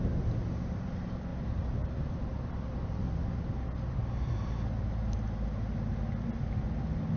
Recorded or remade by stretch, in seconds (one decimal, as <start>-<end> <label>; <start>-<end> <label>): 0.0-7.2 recorded